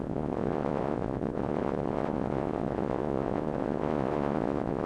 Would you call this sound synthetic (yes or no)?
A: yes